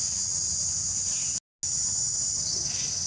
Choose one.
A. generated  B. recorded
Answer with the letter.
B